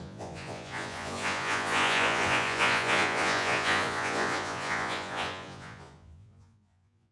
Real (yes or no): no